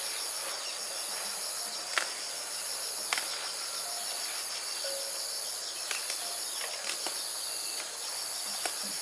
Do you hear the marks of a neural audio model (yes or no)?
no